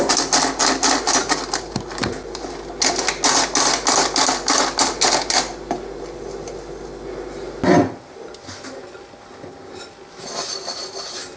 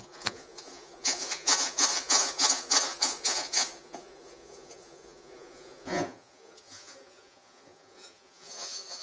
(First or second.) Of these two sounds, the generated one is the second